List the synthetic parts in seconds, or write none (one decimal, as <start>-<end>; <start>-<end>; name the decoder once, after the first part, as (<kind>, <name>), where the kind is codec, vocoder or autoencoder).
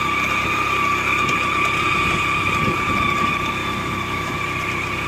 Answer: 3.6-4.4 (autoencoder, DAC-VAE)